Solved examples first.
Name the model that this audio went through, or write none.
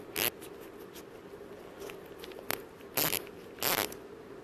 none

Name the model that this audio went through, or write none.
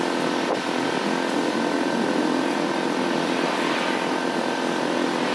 none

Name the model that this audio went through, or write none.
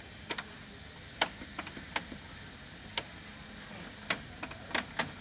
none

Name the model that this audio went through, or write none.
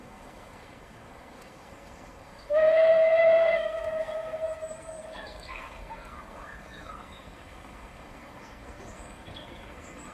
codec, SNAC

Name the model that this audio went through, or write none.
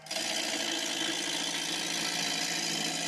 none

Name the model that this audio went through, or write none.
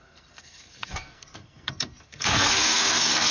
codec, SNAC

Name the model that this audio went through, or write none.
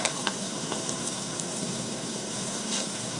codec, SNAC